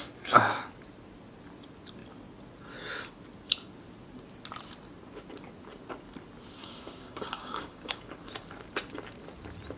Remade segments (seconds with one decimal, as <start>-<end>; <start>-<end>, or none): 6.6-8.0